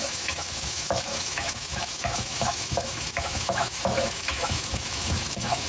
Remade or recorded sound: remade